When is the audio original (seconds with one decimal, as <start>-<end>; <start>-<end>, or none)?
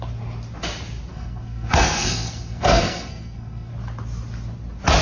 0.0-1.1; 3.7-5.0